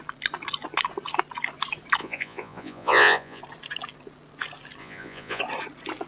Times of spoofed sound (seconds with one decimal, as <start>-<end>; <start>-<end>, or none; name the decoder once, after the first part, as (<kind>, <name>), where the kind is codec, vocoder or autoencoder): 2.0-3.4 (vocoder, Vocos); 4.8-5.4